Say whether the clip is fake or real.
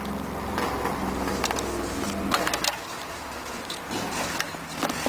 real